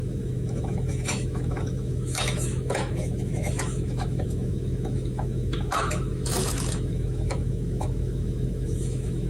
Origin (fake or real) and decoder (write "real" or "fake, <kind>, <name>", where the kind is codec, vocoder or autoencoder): fake, autoencoder, DAC-VAE